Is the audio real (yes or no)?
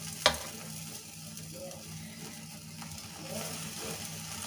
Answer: yes